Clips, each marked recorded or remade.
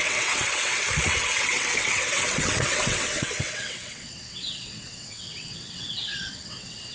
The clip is remade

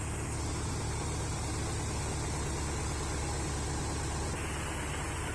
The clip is recorded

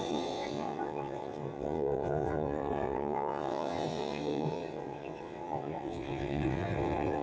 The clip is remade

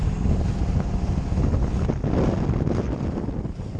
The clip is recorded